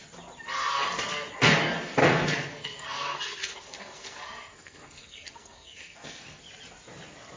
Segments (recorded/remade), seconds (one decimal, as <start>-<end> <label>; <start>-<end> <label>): 0.0-2.0 recorded; 2.0-6.4 remade; 6.4-7.4 recorded